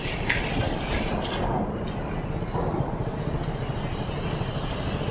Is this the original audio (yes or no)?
yes